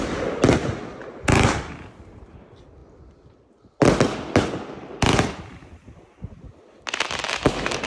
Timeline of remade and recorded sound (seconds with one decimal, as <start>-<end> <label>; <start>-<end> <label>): 0.0-7.9 recorded